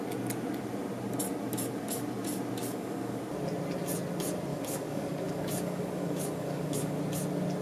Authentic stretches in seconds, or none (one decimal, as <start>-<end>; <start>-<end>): 0.0-2.6; 3.2-4.5; 7.0-7.6